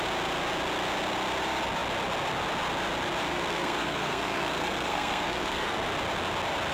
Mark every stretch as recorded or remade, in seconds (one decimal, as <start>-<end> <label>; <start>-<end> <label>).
0.0-3.3 recorded; 3.3-5.8 remade; 5.8-6.7 recorded